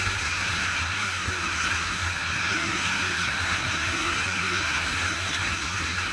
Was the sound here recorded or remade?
remade